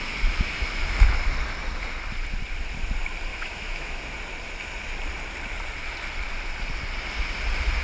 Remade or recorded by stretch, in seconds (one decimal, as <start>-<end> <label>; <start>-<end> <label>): 0.0-3.3 recorded; 3.3-4.0 remade; 4.0-7.8 recorded